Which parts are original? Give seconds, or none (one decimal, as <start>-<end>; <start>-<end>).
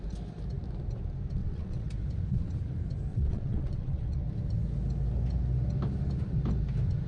0.0-1.4; 1.9-3.1; 4.2-7.1